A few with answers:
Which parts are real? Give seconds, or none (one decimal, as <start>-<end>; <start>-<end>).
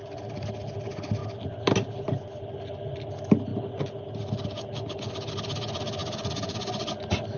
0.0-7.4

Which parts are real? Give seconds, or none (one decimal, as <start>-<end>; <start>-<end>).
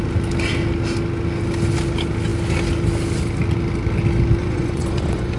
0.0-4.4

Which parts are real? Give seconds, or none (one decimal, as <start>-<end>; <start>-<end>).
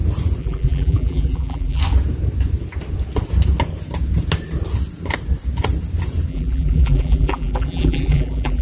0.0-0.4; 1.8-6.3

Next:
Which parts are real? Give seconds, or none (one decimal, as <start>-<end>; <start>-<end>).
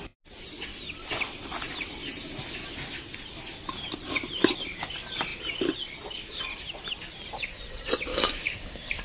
0.0-8.1